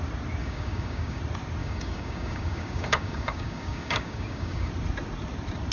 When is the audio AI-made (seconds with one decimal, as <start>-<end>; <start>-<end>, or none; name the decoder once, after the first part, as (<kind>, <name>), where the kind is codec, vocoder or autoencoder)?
0.4-1.2 (codec, DAC); 1.6-4.7